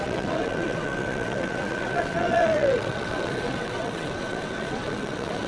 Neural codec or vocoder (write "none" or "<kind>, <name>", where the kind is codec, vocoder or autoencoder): vocoder, WaveNeXt